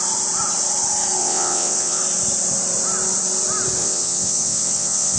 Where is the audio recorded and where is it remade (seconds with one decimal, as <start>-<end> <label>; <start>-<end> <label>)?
0.0-1.2 recorded; 1.2-2.0 remade; 2.0-3.8 recorded; 3.8-5.2 remade